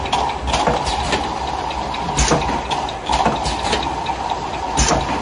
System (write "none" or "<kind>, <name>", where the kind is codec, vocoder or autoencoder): none